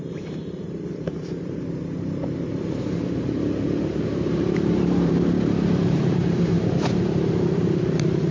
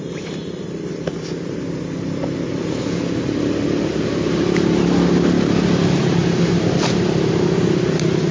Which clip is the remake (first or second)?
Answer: first